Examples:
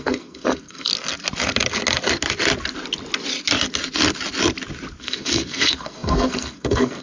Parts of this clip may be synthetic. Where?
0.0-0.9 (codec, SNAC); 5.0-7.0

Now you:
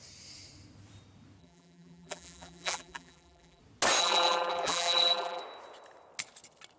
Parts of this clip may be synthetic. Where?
1.4-3.6 (vocoder, BigVGAN v2); 4.0-5.4

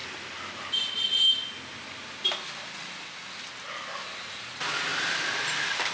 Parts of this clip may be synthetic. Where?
4.0-4.5 (vocoder, BigVGAN v2); 4.9-5.9

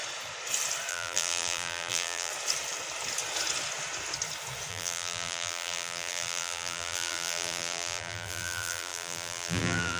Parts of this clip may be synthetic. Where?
0.9-2.3 (vocoder, BigVGAN v2); 4.7-10.0

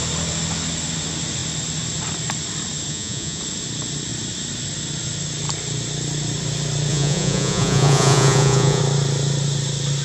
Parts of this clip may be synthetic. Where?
2.9-3.4 (vocoder, Vocos); 6.9-8.8